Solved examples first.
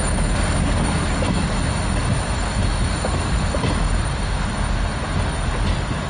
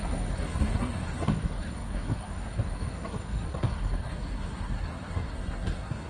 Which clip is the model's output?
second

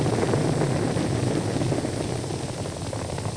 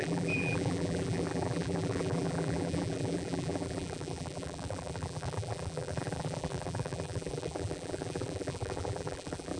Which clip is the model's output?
second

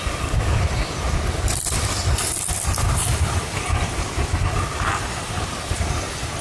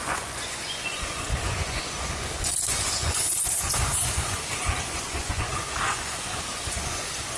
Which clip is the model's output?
second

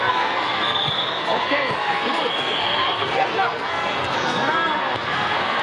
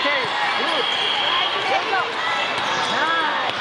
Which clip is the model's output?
first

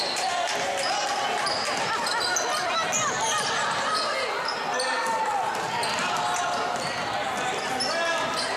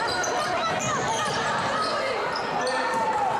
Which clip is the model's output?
second